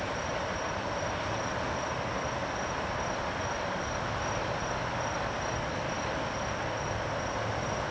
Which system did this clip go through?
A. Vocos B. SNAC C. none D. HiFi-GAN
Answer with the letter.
C